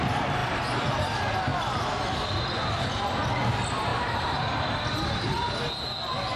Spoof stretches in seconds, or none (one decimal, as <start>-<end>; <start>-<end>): 0.4-0.9; 1.5-2.8; 3.9-5.5